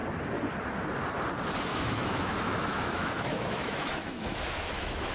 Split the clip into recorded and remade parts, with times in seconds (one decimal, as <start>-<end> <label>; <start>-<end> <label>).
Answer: 0.0-1.7 recorded; 1.7-5.1 remade